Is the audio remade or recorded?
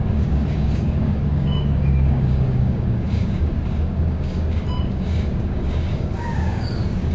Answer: remade